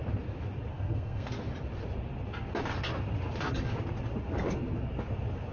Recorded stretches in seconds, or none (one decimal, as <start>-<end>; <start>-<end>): 0.0-0.7; 1.3-5.5